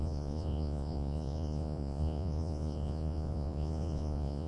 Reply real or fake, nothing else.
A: fake